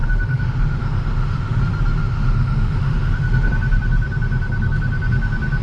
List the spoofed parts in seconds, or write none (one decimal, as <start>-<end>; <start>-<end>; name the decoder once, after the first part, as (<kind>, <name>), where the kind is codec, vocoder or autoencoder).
0.0-1.6 (autoencoder, DAC-VAE); 2.0-3.5